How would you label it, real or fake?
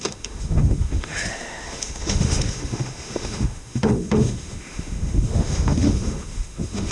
fake